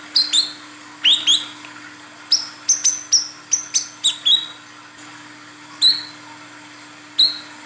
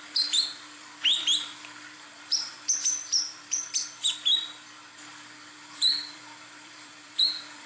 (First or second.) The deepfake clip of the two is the second